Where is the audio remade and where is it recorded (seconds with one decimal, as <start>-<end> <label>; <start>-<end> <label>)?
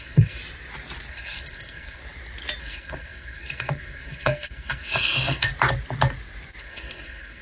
0.0-0.4 remade; 0.4-1.1 recorded; 1.1-2.0 remade; 2.0-2.6 recorded; 2.6-5.5 remade; 5.5-6.6 recorded; 6.6-7.4 remade